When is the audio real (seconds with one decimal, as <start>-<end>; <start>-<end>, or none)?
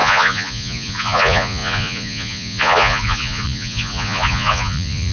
none